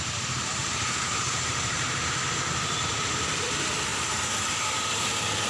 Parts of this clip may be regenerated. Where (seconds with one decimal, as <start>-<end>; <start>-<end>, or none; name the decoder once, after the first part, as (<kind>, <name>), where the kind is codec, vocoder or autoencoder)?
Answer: 0.6-3.5 (vocoder, BigVGAN v2); 3.9-5.5